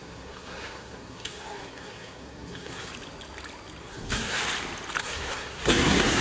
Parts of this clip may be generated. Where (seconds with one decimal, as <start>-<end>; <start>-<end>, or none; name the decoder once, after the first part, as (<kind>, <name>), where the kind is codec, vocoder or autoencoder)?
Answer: 0.0-2.9 (codec, SNAC); 3.8-4.4; 5.0-6.2